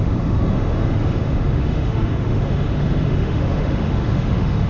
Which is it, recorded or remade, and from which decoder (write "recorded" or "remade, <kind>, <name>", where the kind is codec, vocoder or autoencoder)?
remade, autoencoder, DAC-VAE